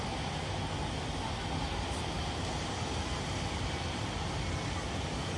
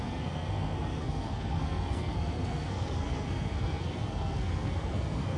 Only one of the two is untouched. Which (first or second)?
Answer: first